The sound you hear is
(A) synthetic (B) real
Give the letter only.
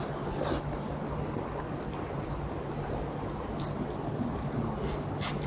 B